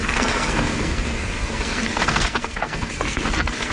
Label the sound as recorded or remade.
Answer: remade